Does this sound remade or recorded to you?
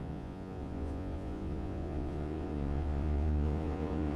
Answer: remade